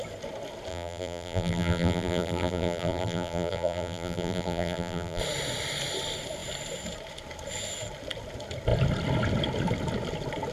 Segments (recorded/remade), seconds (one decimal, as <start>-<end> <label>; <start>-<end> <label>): 0.0-0.7 recorded; 0.7-5.2 remade; 5.2-10.5 recorded